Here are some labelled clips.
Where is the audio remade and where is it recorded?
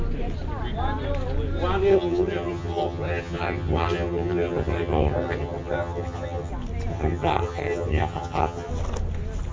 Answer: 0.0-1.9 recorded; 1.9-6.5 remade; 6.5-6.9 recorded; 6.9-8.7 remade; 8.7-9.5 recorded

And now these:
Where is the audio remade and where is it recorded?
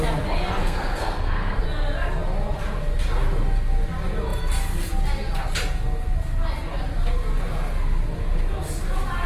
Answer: 0.0-0.6 recorded; 0.6-1.6 remade; 1.6-9.3 recorded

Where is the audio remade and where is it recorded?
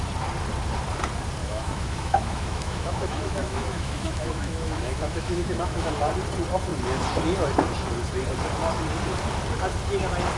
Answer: 0.0-1.4 recorded; 1.4-5.9 remade; 5.9-10.4 recorded